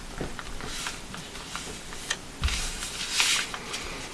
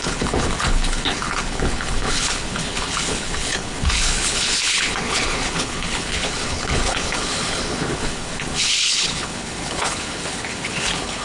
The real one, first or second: first